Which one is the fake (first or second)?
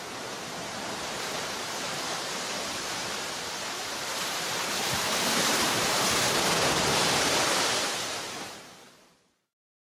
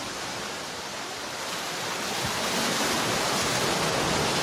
first